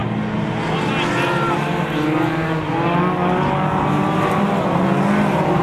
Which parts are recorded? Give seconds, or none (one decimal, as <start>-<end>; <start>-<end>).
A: 0.0-5.6